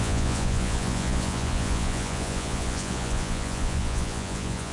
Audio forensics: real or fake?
fake